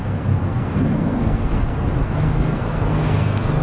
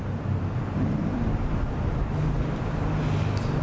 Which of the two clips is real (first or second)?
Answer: second